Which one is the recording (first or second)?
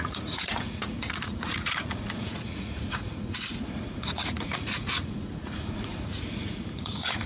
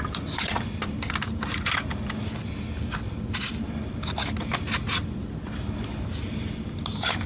second